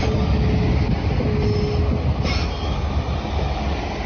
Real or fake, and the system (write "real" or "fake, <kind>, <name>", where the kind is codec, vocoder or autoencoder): real